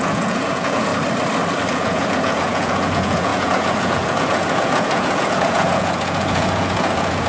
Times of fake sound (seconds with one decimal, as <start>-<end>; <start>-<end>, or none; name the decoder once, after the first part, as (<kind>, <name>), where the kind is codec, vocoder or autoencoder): 0.0-0.9 (vocoder, Vocos); 1.7-7.3